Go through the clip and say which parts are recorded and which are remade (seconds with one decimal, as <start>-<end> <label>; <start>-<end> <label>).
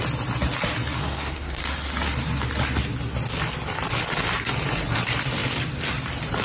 0.0-1.0 recorded; 1.0-1.6 remade; 1.6-6.4 recorded